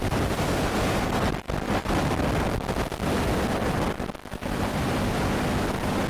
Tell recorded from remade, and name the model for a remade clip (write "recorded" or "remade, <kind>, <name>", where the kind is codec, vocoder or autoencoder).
recorded